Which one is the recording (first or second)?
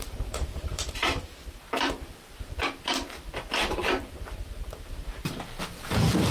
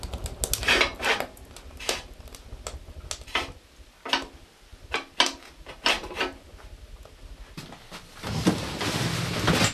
second